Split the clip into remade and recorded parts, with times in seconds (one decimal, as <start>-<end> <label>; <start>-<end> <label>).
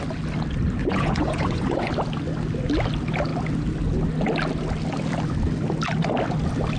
0.0-0.8 recorded; 0.8-1.9 remade; 1.9-6.8 recorded